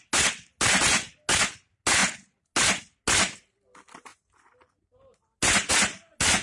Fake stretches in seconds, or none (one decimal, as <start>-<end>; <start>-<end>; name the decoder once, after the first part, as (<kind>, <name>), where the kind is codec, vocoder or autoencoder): none